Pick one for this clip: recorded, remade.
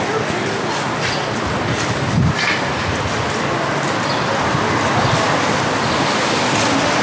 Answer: recorded